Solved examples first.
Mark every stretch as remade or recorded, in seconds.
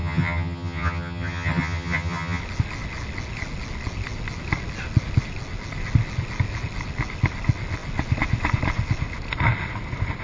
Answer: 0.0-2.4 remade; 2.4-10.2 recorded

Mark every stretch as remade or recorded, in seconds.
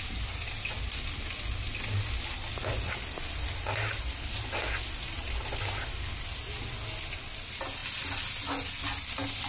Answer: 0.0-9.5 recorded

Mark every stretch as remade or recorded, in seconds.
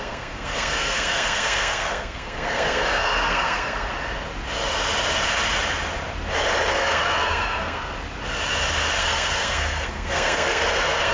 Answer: 0.0-3.9 remade; 3.9-6.7 recorded; 6.7-7.9 remade; 7.9-9.0 recorded; 9.0-11.1 remade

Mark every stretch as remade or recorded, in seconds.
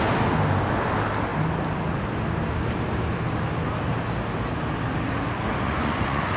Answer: 0.0-5.5 recorded; 5.5-6.4 remade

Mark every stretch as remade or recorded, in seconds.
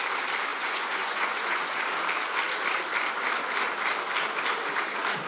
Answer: 0.0-0.5 recorded; 0.5-1.8 remade; 1.8-5.3 recorded